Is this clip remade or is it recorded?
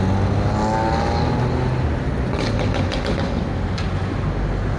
recorded